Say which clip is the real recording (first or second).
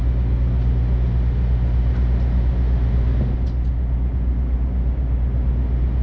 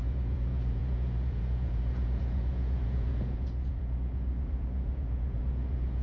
first